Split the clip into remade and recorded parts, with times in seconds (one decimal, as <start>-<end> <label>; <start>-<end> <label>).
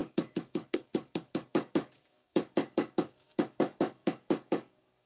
0.0-5.1 remade